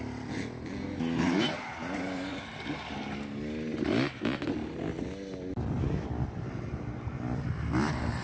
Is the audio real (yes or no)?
yes